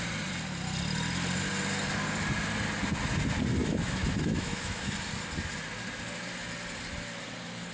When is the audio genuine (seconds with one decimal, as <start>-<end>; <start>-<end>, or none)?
0.0-3.6; 4.9-7.7